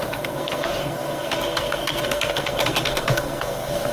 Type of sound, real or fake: fake